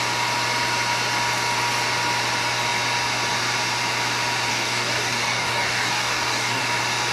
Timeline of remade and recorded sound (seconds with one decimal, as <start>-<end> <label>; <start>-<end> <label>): 0.0-4.5 recorded; 4.5-6.6 remade; 6.6-7.1 recorded